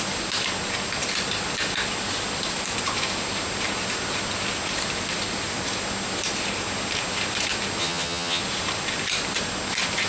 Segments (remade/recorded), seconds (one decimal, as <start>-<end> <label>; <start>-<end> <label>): 0.0-7.8 recorded; 7.8-8.4 remade; 8.4-10.1 recorded